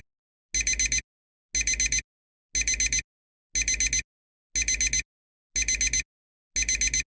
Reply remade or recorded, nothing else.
recorded